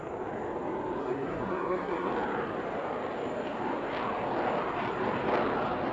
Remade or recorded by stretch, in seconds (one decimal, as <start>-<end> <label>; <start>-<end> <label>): 0.0-1.0 recorded; 1.0-2.1 remade; 2.1-5.9 recorded